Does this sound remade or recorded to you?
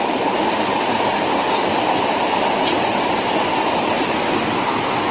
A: recorded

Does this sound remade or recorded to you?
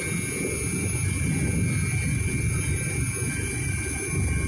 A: recorded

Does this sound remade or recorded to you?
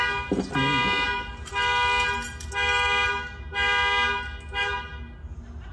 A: recorded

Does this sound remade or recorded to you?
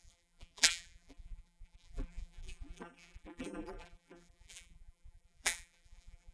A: remade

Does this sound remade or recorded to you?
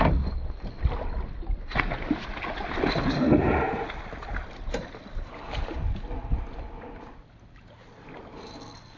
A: recorded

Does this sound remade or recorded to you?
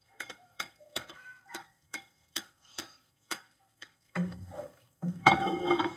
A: remade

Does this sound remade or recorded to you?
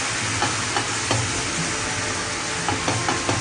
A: recorded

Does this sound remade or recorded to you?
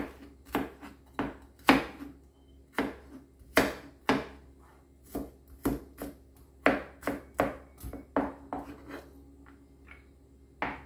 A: recorded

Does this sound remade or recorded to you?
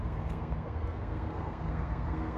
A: remade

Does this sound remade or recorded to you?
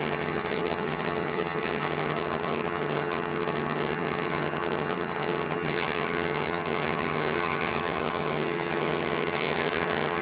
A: remade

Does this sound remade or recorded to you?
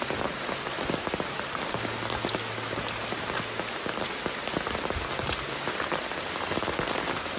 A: recorded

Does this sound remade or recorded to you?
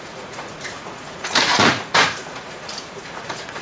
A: remade